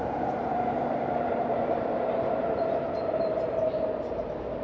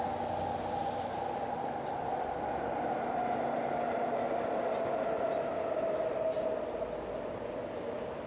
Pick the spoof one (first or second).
first